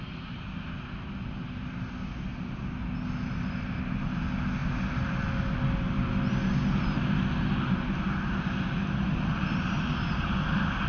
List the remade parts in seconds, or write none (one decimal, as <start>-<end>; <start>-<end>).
none